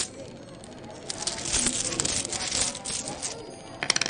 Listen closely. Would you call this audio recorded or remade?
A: recorded